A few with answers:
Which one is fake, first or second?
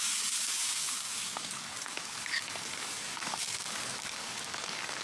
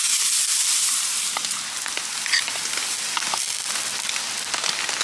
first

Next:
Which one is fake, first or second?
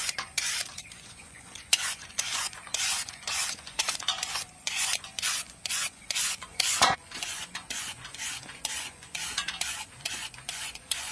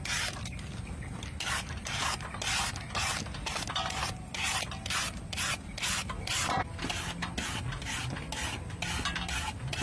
first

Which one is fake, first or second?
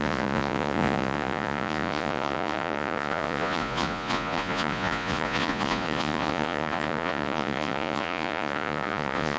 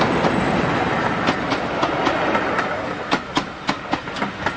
first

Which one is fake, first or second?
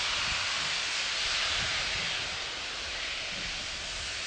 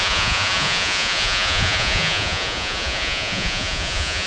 second